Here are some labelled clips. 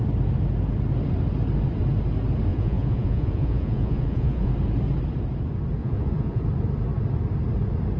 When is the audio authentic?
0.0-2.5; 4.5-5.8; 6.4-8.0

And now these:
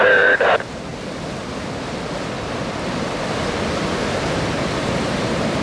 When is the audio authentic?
0.9-3.9

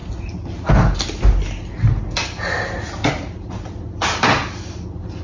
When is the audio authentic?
0.0-5.2

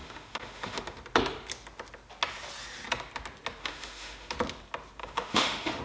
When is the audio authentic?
0.8-3.6; 4.3-5.0

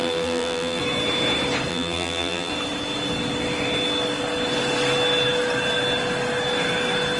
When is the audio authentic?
0.8-1.7; 2.5-7.2

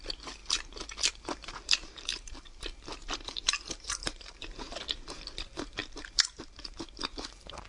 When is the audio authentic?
0.4-1.1